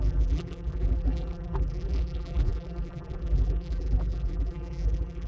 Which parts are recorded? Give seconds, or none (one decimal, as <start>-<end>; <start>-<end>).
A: none